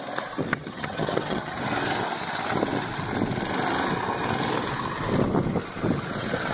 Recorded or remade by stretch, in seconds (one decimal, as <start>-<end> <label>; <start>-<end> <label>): 0.0-0.5 recorded; 0.5-1.6 remade; 1.6-6.5 recorded